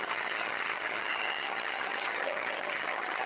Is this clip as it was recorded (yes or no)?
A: no